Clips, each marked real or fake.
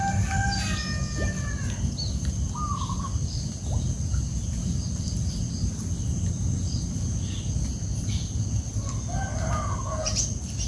real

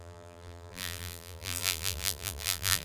fake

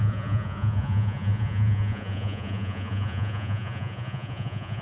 fake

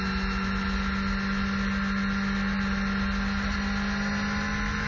real